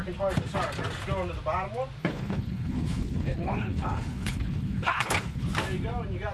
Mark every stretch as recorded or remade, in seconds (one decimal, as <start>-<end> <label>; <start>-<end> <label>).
0.0-2.0 recorded; 2.0-5.5 remade; 5.5-6.3 recorded